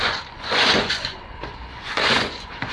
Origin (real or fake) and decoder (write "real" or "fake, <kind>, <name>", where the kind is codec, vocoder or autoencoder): fake, vocoder, Vocos